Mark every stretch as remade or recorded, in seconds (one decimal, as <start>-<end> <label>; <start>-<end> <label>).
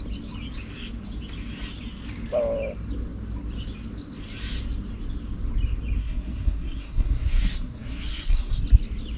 0.0-6.0 recorded; 6.0-8.6 remade; 8.6-9.2 recorded